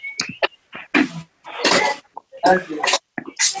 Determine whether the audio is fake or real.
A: real